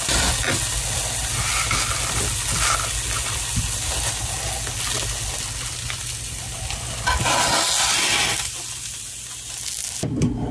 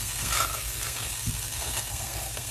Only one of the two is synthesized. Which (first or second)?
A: second